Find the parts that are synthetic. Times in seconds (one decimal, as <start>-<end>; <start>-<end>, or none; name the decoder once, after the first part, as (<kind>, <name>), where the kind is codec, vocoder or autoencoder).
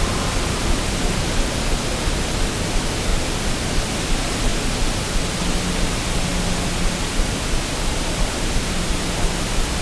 3.1-3.7 (vocoder, BigVGAN v2)